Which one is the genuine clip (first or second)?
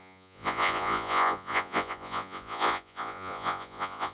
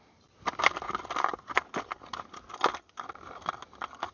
second